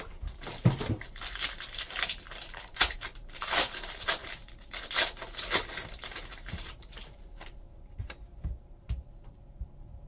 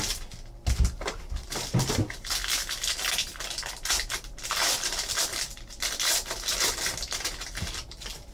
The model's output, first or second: first